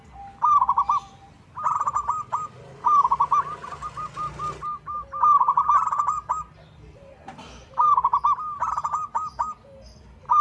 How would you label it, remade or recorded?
recorded